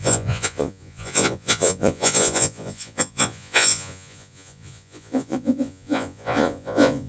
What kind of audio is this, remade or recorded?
remade